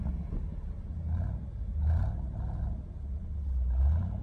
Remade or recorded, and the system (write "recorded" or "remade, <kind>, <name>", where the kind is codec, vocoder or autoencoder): recorded